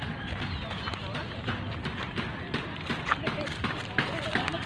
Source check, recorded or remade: recorded